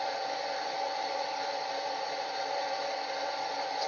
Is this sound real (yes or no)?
yes